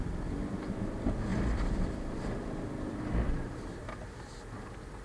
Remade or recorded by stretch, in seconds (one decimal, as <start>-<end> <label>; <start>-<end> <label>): 0.0-1.3 recorded; 1.3-4.3 remade; 4.3-5.0 recorded